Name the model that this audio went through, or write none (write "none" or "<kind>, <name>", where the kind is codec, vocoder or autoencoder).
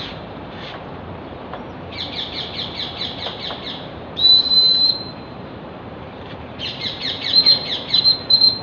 vocoder, BigVGAN v2